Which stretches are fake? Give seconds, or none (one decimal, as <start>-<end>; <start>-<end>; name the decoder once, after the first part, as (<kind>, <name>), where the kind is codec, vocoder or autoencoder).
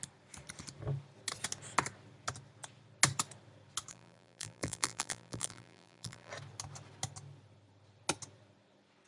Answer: 3.9-6.3 (vocoder, BigVGAN v2)